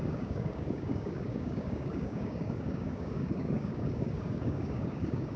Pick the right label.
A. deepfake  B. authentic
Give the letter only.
A